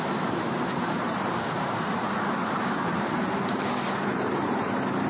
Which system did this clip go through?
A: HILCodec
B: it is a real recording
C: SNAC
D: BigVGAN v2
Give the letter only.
D